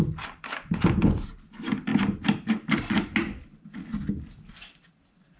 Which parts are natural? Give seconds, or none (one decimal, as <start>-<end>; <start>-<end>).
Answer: 1.9-3.5; 3.9-4.5